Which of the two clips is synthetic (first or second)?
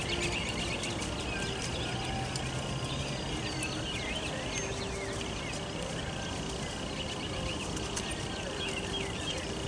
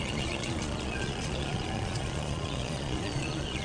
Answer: second